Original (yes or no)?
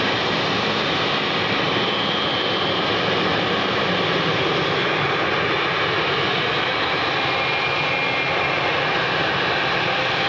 yes